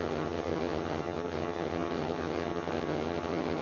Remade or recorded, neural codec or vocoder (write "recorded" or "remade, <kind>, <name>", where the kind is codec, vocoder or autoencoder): remade, vocoder, HiFi-GAN